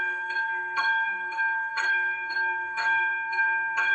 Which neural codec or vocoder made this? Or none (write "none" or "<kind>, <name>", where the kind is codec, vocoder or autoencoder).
codec, SNAC